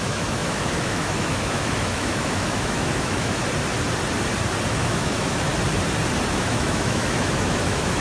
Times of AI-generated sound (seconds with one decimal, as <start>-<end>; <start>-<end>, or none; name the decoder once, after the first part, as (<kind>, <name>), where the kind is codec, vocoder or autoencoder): 0.0-3.4 (autoencoder, DAC-VAE); 4.7-5.5; 6.3-8.0